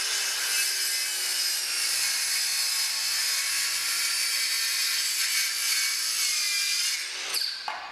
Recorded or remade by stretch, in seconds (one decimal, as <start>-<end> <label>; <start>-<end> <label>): 0.0-7.9 recorded